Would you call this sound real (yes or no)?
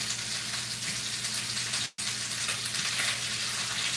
yes